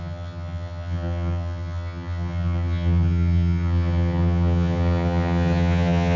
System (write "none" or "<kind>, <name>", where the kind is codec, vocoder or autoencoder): vocoder, HiFi-GAN